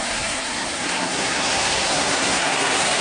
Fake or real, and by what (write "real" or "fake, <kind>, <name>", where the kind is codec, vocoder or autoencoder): fake, codec, SNAC